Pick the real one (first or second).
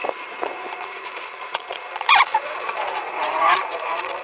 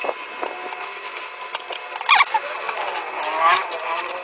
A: second